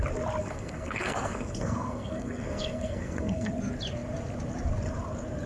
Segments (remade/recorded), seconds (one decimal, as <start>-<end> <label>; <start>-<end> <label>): 0.0-0.4 recorded; 0.4-3.5 remade; 3.5-5.5 recorded